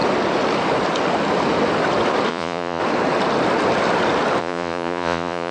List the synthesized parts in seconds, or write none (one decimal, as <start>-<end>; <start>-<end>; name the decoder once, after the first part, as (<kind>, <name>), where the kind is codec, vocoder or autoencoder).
2.3-2.8 (vocoder, Vocos); 4.4-5.5